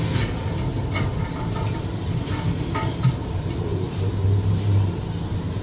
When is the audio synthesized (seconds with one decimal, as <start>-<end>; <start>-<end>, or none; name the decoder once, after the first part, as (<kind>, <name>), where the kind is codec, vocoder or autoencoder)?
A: 0.7-4.1 (vocoder, BigVGAN v2)